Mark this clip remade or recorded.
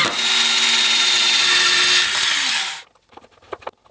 recorded